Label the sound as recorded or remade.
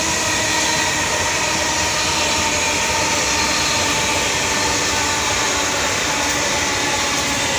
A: recorded